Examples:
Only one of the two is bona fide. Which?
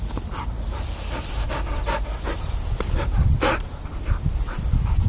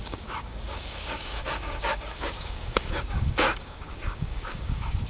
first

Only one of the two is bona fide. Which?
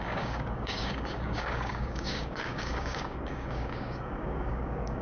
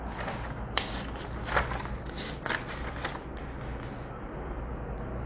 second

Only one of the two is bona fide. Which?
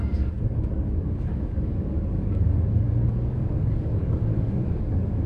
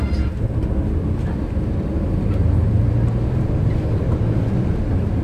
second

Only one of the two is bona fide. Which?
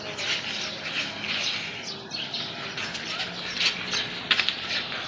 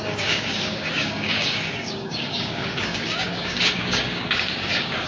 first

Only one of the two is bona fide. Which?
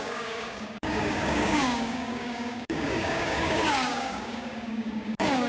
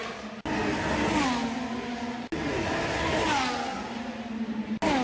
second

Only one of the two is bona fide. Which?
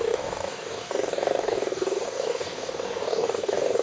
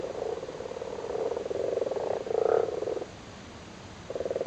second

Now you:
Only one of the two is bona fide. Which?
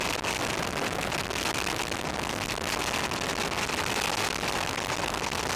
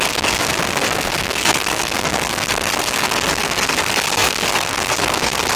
first